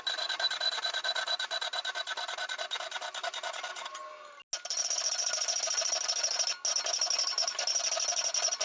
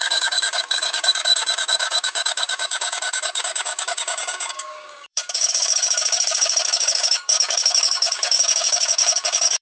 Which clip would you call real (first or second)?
first